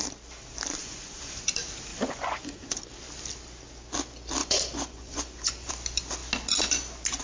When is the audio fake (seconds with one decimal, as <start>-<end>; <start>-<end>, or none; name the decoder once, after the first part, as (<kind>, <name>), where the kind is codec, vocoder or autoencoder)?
0.8-1.4 (vocoder, Vocos); 1.9-2.8; 4.4-5.7